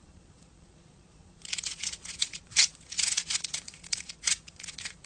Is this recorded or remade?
remade